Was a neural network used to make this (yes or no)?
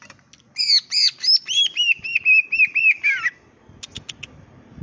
no